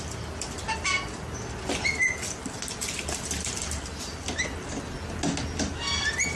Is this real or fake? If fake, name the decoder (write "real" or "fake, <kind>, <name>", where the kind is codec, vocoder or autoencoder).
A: real